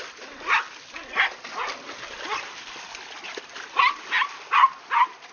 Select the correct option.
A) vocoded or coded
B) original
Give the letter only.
B